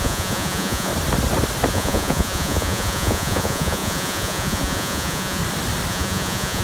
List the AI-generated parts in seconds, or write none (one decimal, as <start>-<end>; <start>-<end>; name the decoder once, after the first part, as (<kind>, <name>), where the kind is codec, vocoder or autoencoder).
0.0-0.9 (vocoder, Vocos); 1.7-5.4; 5.9-6.6

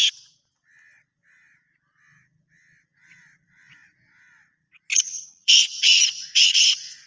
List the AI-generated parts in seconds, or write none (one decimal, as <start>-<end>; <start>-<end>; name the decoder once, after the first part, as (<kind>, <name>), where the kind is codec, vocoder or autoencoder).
4.9-7.1 (vocoder, Vocos)

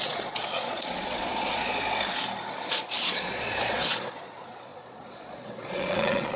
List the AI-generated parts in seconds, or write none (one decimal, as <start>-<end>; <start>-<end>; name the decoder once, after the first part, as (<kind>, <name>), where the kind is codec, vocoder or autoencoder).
0.0-1.7 (vocoder, Vocos); 2.7-6.4

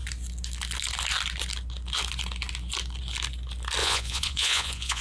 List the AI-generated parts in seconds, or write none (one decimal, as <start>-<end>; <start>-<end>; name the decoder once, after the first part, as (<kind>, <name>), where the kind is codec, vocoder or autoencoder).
3.8-5.0 (vocoder, Vocos)

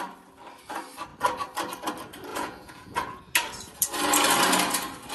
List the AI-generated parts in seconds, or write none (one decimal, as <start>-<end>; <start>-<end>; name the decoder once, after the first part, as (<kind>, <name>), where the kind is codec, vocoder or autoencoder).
2.3-3.2 (vocoder, Vocos)